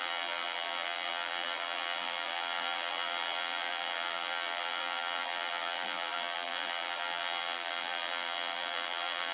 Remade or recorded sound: remade